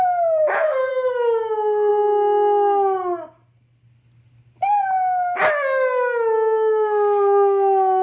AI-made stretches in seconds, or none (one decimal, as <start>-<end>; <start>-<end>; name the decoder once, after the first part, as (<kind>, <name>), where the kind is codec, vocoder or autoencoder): 0.4-1.1 (vocoder, BigVGAN v2)